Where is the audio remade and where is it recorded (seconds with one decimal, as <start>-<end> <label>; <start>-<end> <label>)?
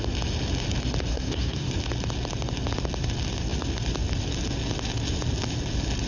0.0-1.1 recorded; 1.1-1.7 remade; 1.7-6.1 recorded